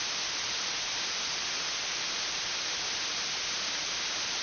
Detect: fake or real real